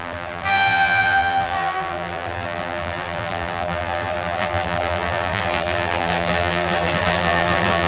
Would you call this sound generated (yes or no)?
yes